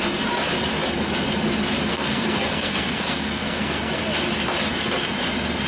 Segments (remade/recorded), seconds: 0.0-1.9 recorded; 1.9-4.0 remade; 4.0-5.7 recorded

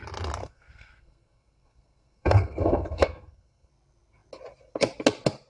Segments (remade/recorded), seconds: 0.0-0.4 recorded; 0.4-3.7 remade; 3.7-5.5 recorded

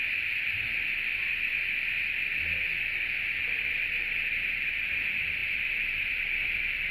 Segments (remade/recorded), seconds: 0.0-1.5 remade; 1.5-3.4 recorded; 3.4-6.9 remade

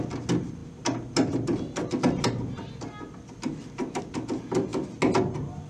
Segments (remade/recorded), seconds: 0.0-5.7 recorded

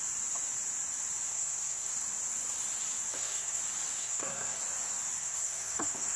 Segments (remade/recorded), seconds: 0.0-1.3 recorded; 1.3-1.9 remade; 1.9-3.1 recorded; 3.1-3.6 remade; 3.6-4.0 recorded; 4.0-4.6 remade; 4.6-5.2 recorded; 5.2-6.2 remade